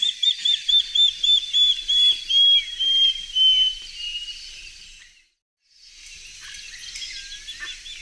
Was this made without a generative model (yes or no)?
yes